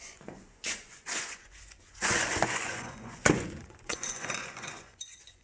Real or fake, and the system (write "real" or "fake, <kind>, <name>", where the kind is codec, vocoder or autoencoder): fake, vocoder, Vocos